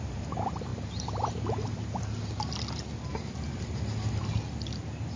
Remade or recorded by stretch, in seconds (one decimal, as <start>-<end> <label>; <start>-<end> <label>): 0.0-0.7 recorded; 0.7-2.0 remade; 2.0-5.2 recorded